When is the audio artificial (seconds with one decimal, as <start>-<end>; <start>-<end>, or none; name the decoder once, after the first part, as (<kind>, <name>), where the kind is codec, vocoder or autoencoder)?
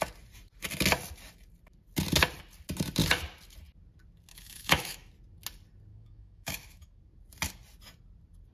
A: 4.3-5.1 (autoencoder, DAC-VAE); 5.9-7.0